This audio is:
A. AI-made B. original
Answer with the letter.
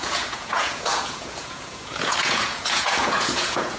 A